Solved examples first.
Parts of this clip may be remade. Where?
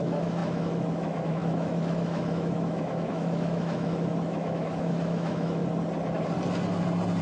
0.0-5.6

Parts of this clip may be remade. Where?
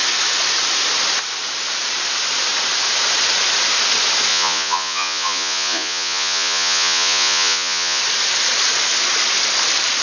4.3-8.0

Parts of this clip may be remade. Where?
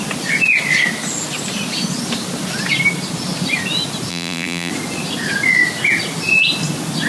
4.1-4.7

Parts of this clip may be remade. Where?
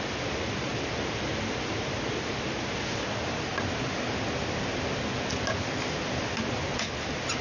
none